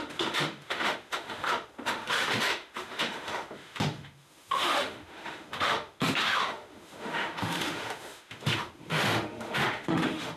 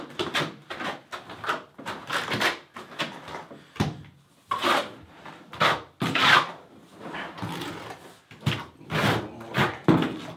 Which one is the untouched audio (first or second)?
second